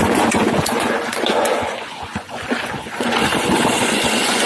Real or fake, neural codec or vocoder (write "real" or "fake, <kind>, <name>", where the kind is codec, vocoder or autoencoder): fake, vocoder, Vocos